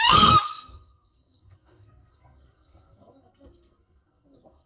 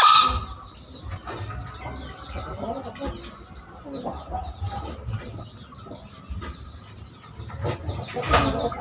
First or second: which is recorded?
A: second